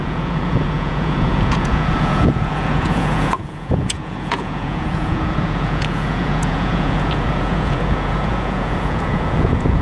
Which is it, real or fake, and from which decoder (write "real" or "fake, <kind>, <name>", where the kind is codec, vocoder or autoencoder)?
fake, vocoder, Vocos